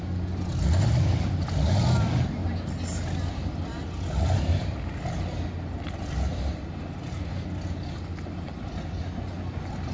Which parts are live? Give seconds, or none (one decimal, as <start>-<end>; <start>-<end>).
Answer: 0.0-9.9